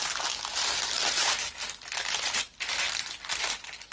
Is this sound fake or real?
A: real